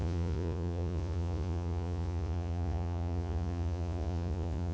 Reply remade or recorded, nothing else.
remade